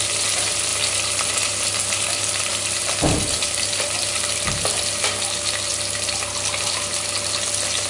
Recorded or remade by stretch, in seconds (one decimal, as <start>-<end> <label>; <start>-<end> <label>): 0.0-0.7 recorded; 0.7-1.3 remade; 1.3-2.5 recorded; 2.5-4.1 remade; 4.1-5.7 recorded; 5.7-6.9 remade; 6.9-7.9 recorded